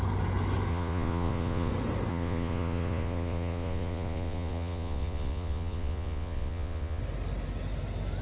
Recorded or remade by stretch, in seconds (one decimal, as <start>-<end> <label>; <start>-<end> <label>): 0.0-0.7 recorded; 0.7-1.7 remade; 1.7-2.1 recorded; 2.1-7.0 remade; 7.0-8.2 recorded